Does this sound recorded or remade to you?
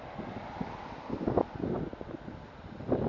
recorded